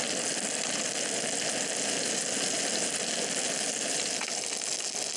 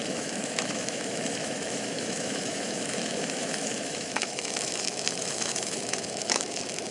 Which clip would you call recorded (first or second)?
first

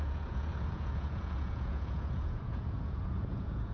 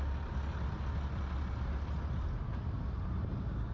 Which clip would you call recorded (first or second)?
second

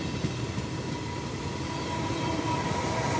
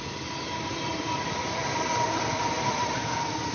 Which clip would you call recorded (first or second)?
first